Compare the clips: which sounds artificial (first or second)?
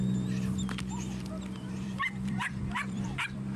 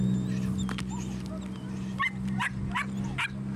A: first